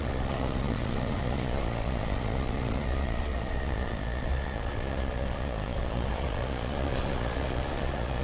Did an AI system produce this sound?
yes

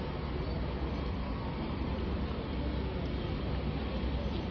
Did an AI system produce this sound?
no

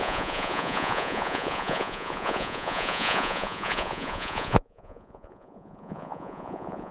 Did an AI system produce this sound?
yes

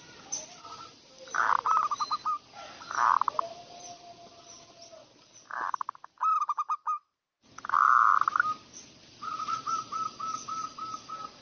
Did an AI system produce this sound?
no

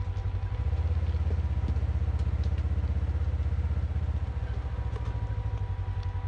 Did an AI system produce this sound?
no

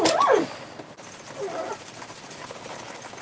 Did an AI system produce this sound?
no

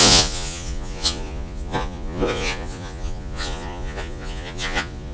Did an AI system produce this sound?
yes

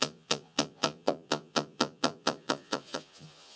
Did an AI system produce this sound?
yes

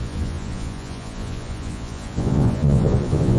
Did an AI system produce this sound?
yes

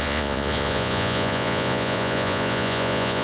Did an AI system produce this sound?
yes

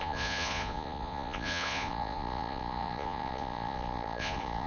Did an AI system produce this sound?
yes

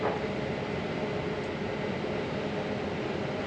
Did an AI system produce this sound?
no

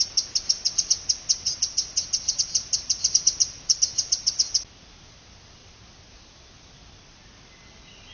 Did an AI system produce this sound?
no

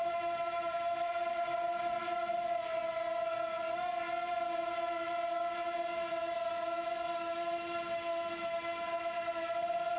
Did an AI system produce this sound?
no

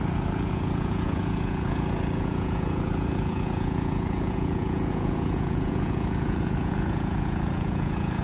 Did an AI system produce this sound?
yes